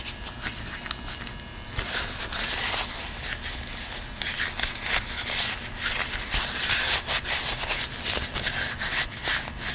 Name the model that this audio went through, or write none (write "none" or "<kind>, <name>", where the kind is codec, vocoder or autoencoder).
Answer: none